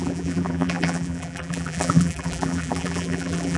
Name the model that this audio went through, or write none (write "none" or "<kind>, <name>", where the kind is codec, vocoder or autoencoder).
vocoder, BigVGAN v2